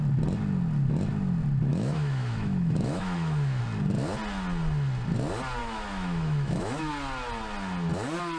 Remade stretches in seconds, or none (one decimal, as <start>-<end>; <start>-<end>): 1.7-3.6; 5.6-6.9